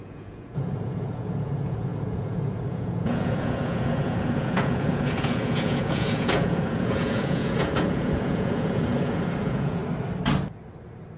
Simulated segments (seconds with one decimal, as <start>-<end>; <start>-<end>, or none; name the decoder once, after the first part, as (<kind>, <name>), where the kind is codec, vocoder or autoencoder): 0.0-9.8 (vocoder, Vocos)